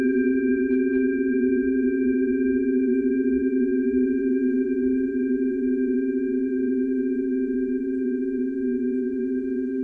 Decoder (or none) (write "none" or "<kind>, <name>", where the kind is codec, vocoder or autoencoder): vocoder, Vocos